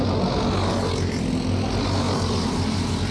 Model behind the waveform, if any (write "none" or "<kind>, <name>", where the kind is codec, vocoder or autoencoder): none